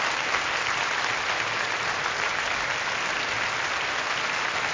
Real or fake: real